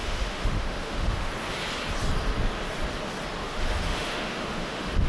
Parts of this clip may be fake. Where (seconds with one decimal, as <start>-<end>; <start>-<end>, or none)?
0.0-1.3; 3.4-5.1

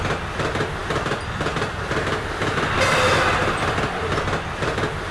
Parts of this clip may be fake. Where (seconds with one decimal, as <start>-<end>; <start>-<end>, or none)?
none